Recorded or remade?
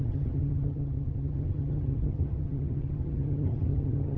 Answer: remade